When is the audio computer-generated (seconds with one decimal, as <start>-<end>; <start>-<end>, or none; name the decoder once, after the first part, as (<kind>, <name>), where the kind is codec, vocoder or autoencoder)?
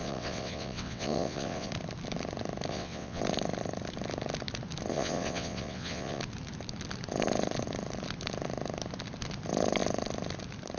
0.0-1.7 (vocoder, WaveNeXt); 2.7-3.2; 4.9-6.2